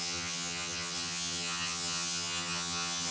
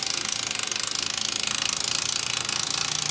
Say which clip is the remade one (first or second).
first